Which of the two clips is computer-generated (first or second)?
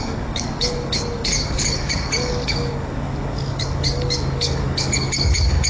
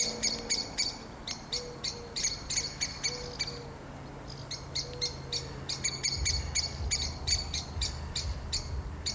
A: first